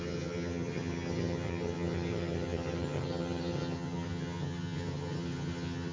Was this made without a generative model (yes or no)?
no